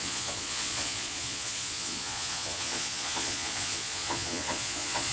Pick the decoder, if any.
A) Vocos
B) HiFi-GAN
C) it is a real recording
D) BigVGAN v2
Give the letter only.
A